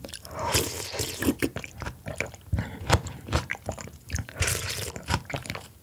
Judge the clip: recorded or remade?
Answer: remade